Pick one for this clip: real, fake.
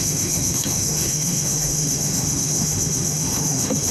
fake